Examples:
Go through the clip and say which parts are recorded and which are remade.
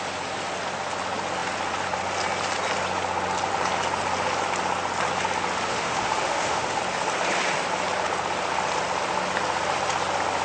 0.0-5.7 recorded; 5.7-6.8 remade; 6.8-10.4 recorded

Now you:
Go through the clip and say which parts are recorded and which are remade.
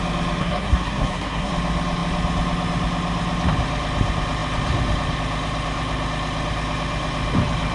0.0-0.4 recorded; 0.4-1.5 remade; 1.5-7.7 recorded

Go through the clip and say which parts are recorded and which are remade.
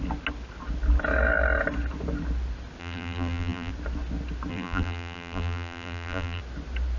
0.0-2.8 recorded; 2.8-3.7 remade; 3.7-4.5 recorded; 4.5-6.4 remade; 6.4-7.0 recorded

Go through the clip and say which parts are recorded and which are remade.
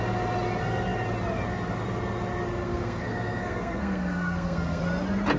0.0-2.6 recorded; 2.6-4.8 remade; 4.8-5.4 recorded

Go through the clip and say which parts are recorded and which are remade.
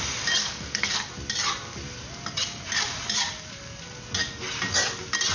0.0-0.4 recorded; 0.4-1.1 remade; 1.1-5.3 recorded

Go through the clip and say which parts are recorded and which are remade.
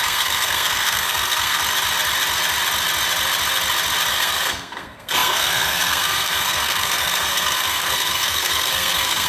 0.0-1.6 remade; 1.6-4.1 recorded; 4.1-9.3 remade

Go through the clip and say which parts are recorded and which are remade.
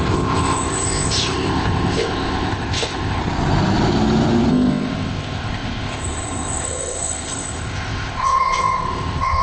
0.0-3.2 remade; 3.2-4.5 recorded; 4.5-9.4 remade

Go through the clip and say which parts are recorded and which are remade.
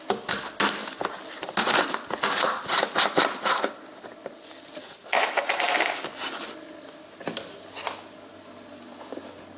0.0-9.6 recorded